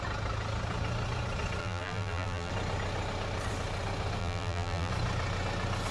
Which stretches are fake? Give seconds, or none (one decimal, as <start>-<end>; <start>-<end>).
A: 1.6-2.5; 4.2-4.9